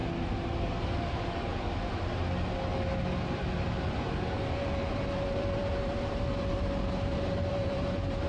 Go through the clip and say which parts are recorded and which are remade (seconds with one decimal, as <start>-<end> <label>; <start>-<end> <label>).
0.0-0.7 recorded; 0.7-1.5 remade; 1.5-4.3 recorded; 4.3-8.3 remade